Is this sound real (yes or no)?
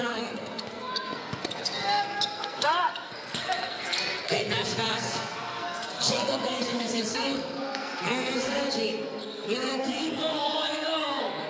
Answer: no